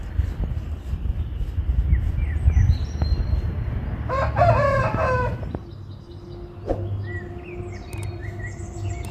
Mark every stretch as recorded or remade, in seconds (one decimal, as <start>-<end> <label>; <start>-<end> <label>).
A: 0.0-1.1 remade; 1.1-3.1 recorded; 3.1-4.0 remade; 4.0-9.1 recorded